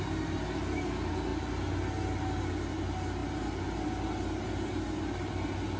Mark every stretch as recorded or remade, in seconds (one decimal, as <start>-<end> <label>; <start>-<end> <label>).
0.0-5.8 recorded